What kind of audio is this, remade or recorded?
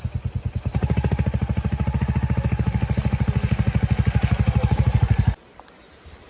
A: recorded